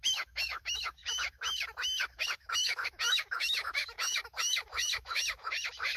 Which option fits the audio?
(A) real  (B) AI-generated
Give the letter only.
B